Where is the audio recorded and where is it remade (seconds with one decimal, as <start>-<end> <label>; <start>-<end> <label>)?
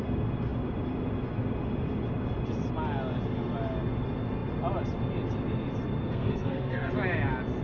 0.0-6.0 recorded; 6.0-6.9 remade; 6.9-7.6 recorded